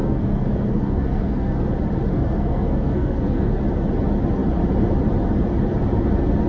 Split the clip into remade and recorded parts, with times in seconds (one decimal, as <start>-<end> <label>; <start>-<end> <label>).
0.0-1.7 remade; 1.7-2.1 recorded; 2.1-3.6 remade; 3.6-6.5 recorded